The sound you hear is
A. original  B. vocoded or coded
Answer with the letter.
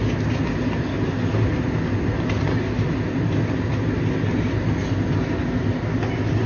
A